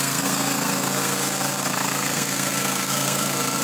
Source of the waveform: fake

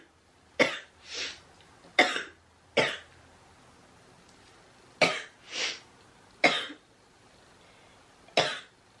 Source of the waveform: real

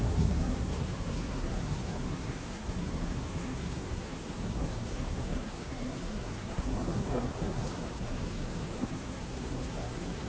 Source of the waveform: fake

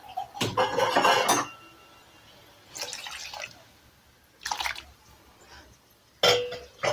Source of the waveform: real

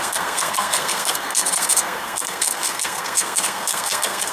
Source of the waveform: fake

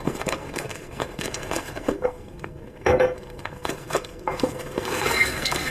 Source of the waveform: fake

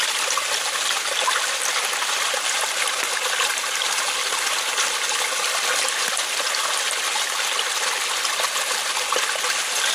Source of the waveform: real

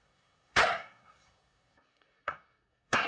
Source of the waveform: fake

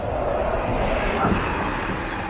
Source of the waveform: real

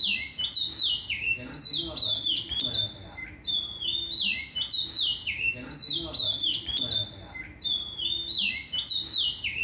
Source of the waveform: real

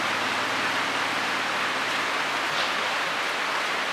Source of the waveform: real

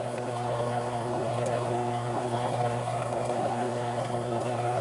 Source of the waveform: fake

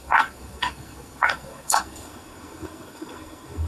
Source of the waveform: fake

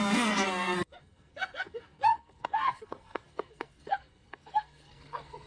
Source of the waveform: fake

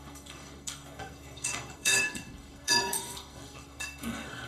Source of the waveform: fake